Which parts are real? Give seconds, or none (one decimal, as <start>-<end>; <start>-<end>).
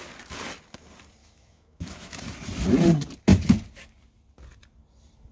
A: 0.0-1.2; 2.2-5.3